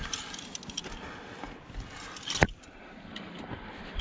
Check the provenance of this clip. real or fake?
real